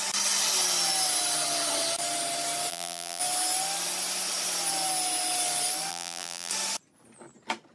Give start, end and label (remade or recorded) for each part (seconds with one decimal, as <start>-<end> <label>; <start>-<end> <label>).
0.0-2.7 recorded; 2.7-3.2 remade; 3.2-5.9 recorded; 5.9-6.5 remade; 6.5-7.7 recorded